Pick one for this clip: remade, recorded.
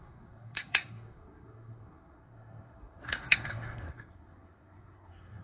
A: remade